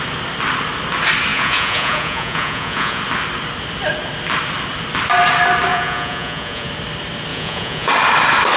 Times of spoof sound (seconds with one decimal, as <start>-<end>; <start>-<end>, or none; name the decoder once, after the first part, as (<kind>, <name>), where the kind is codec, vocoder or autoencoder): 1.3-3.0 (vocoder, Vocos); 5.7-6.7; 7.3-7.9